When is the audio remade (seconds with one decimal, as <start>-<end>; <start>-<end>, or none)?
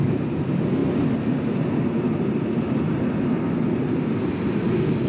none